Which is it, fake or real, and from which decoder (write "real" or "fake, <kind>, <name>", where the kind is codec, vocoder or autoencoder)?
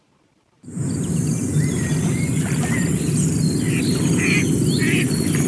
real